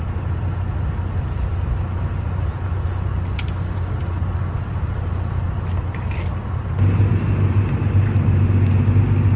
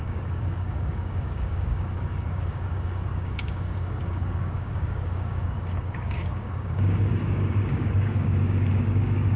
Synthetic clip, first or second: second